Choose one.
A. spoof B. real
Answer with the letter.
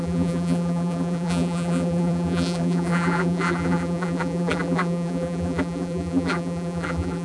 A